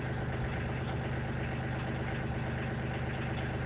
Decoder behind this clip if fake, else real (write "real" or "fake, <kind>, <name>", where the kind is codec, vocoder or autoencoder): real